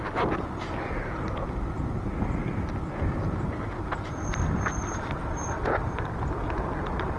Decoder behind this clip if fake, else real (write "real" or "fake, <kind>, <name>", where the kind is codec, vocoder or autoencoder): real